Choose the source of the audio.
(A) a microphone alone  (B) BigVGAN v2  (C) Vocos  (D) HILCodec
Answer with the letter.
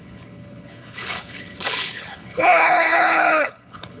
D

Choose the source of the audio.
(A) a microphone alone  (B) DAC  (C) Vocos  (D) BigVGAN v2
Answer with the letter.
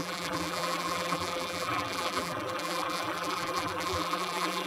D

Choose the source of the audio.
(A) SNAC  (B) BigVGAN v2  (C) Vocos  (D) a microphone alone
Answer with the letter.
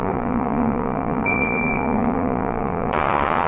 C